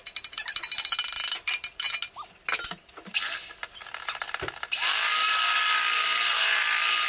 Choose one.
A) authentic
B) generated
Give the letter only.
A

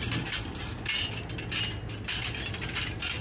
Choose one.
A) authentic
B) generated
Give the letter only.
A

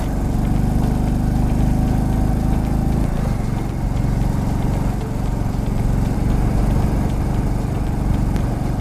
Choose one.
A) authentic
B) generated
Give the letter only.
A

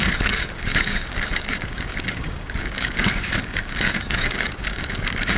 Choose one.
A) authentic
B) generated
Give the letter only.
B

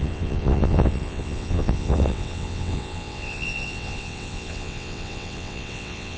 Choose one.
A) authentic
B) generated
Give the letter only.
B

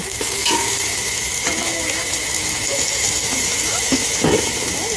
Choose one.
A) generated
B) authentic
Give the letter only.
A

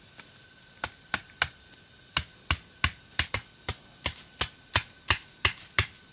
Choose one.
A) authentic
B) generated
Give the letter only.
A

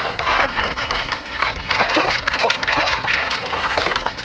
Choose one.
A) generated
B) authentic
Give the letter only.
A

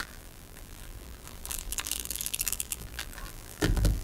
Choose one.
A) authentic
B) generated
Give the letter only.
B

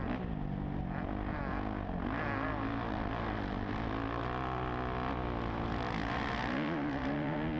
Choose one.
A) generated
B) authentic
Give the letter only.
B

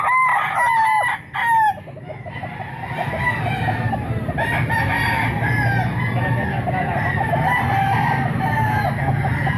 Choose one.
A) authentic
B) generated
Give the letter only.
A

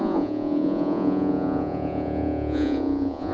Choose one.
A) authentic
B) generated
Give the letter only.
B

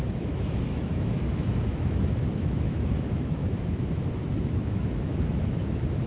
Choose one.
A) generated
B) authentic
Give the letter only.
A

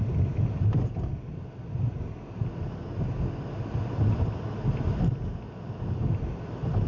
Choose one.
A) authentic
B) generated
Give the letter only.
A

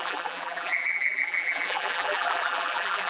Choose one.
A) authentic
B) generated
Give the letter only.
B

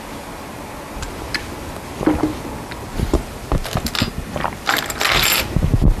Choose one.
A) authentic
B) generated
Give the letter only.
A